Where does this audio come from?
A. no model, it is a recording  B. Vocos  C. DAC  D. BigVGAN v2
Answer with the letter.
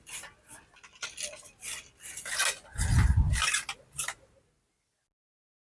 A